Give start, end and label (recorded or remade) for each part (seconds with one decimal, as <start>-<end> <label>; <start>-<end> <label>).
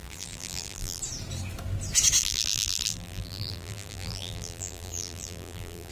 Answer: 0.0-1.0 remade; 1.0-2.2 recorded; 2.2-5.9 remade